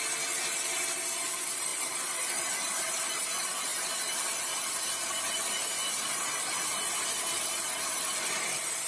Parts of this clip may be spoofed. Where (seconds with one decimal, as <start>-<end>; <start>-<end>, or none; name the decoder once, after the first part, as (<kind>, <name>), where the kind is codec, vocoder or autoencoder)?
none